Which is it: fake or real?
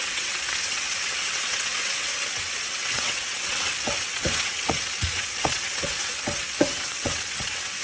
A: fake